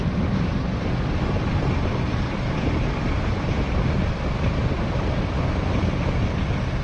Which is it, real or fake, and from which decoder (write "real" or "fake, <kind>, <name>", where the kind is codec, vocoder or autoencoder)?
real